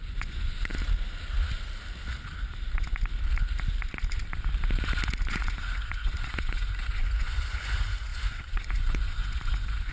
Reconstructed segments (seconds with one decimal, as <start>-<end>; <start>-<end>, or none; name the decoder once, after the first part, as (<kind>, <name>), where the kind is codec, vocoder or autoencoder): 0.0-0.7 (vocoder, Vocos); 5.3-9.9